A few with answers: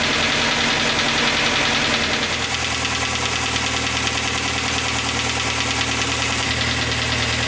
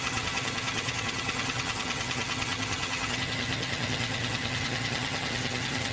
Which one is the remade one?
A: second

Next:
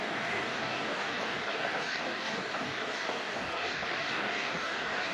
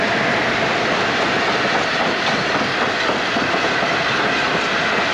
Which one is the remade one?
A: first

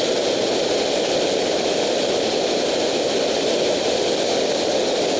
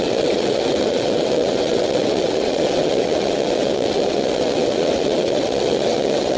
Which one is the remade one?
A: second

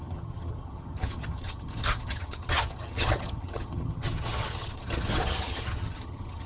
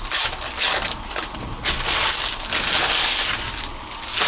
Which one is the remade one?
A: first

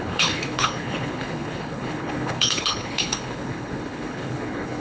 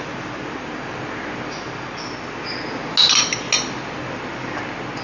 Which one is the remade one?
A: first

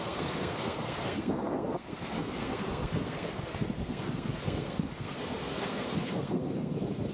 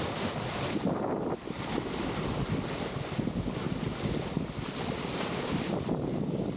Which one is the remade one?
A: first